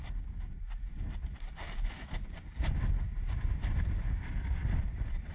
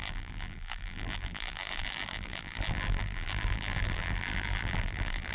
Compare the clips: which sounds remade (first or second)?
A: second